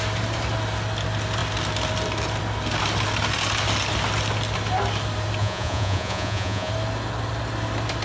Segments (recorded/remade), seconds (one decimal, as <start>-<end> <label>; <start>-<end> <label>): 0.0-5.4 recorded; 5.4-6.7 remade; 6.7-8.0 recorded